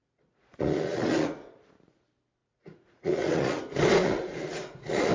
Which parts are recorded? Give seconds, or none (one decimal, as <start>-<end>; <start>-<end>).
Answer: 2.0-2.4; 3.6-4.0